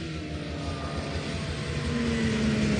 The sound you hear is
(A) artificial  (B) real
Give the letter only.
B